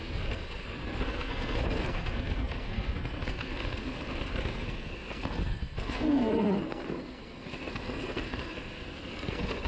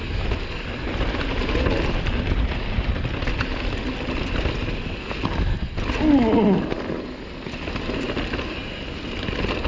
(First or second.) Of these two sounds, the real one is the second